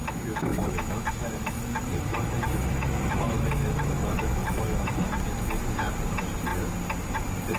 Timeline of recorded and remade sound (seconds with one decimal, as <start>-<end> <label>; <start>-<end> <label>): 0.0-0.5 recorded; 0.5-5.1 remade; 5.1-7.6 recorded